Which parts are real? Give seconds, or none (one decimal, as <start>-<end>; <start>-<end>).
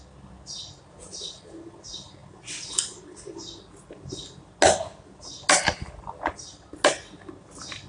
0.0-7.9